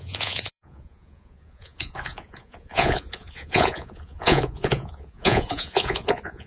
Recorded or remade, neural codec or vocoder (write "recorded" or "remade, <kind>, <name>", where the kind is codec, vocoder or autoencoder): remade, vocoder, Vocos